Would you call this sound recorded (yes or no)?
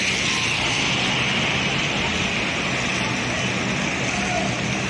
yes